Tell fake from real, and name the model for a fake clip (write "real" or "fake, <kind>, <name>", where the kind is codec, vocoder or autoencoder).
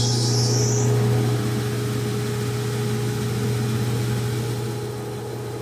real